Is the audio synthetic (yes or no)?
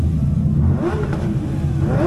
no